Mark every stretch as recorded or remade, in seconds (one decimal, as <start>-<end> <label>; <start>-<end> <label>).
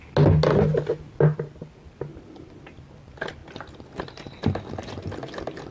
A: 0.0-5.7 recorded